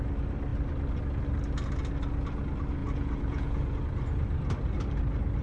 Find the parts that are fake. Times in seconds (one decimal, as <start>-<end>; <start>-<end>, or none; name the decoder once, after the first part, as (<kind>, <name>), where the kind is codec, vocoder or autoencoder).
2.8-3.8 (vocoder, Vocos)